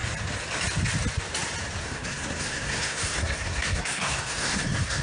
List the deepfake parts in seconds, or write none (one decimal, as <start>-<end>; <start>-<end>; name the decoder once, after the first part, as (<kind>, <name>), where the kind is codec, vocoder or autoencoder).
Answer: 1.8-5.0 (codec, SNAC)